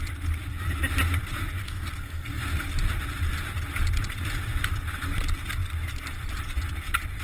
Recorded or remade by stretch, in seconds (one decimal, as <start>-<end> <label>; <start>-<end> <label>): 0.0-1.6 recorded; 1.6-2.4 remade; 2.4-7.2 recorded